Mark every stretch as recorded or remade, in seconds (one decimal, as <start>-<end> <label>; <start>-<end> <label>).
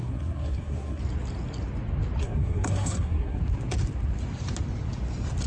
0.0-1.0 remade; 1.0-2.2 recorded; 2.2-3.4 remade; 3.4-5.5 recorded